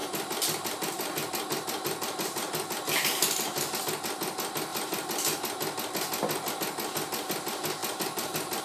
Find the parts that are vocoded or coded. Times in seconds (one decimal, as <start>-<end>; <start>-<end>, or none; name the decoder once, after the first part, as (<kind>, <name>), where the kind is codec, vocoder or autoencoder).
0.0-3.8 (vocoder, BigVGAN v2); 7.8-8.6